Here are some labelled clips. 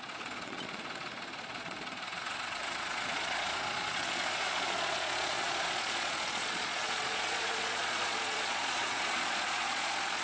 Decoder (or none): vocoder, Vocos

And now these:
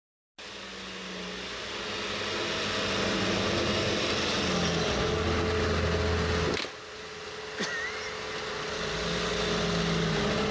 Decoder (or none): none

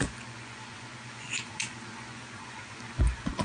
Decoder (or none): vocoder, Vocos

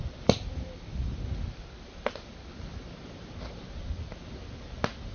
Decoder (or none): none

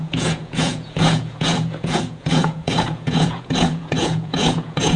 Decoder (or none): vocoder, Vocos